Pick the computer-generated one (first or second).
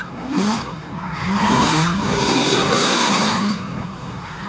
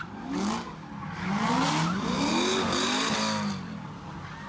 first